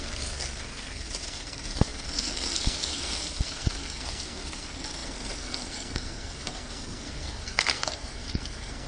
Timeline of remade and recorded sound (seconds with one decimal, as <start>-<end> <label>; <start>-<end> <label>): 0.0-8.9 remade